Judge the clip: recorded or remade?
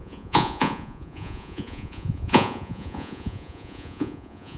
remade